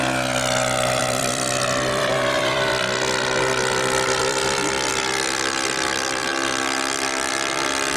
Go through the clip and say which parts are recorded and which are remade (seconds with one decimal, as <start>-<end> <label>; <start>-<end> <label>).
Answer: 0.0-1.0 recorded; 1.0-2.7 remade; 2.7-4.2 recorded; 4.2-4.9 remade; 4.9-8.0 recorded